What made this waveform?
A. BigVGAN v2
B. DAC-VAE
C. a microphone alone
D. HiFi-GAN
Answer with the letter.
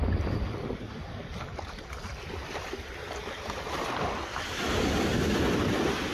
C